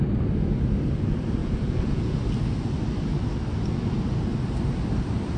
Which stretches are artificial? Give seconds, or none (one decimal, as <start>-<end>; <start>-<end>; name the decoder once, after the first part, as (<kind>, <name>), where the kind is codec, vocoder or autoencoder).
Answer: 1.4-2.2 (vocoder, Vocos)